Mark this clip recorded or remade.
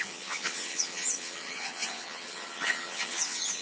remade